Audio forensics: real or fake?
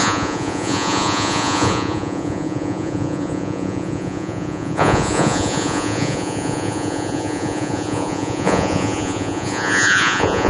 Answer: fake